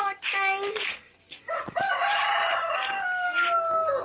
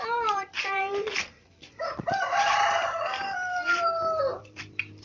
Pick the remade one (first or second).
second